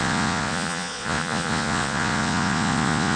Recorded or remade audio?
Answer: remade